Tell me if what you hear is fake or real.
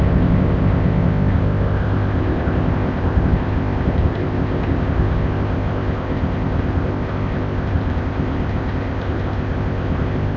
fake